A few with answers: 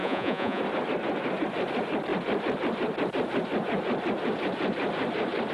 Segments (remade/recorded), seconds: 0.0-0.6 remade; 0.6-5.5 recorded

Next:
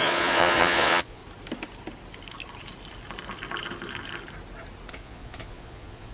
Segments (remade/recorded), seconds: 0.0-1.2 remade; 1.2-4.9 recorded; 4.9-6.1 remade

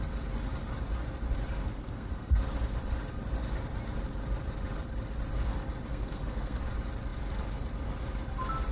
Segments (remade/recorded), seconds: 0.0-1.7 recorded; 1.7-2.4 remade; 2.4-5.9 recorded; 5.9-6.6 remade; 6.6-8.7 recorded

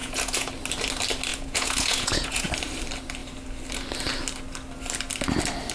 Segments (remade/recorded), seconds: 0.0-0.5 remade; 0.5-1.3 recorded; 1.3-2.5 remade; 2.5-5.7 recorded